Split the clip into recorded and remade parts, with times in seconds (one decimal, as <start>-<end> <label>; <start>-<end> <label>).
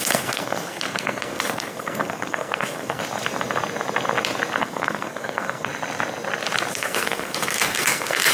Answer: 0.0-3.0 remade; 3.0-4.6 recorded; 4.6-5.7 remade; 5.7-6.7 recorded; 6.7-8.3 remade